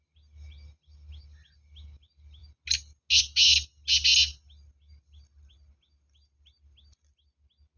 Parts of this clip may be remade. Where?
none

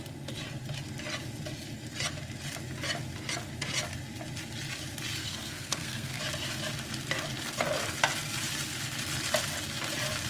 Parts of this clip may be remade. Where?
5.2-6.2

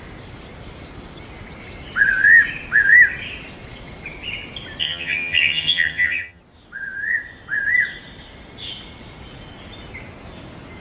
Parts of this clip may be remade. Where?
4.8-6.4

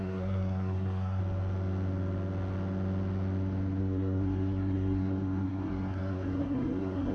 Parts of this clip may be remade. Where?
0.0-1.2; 3.8-7.1